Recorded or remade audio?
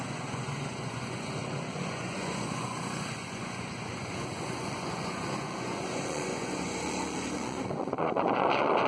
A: remade